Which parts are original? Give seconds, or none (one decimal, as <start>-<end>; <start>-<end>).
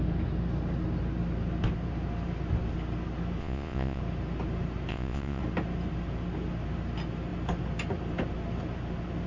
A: 0.0-3.4; 4.0-4.9; 5.4-9.3